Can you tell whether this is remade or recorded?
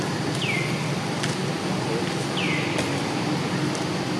recorded